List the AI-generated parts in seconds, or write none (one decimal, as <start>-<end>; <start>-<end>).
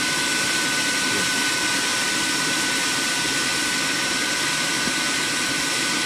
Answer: none